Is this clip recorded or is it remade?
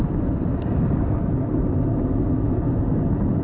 recorded